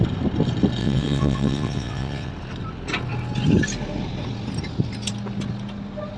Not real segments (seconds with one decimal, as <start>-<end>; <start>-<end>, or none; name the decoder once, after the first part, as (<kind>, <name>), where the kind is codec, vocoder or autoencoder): 0.8-2.3 (vocoder, WaveNeXt)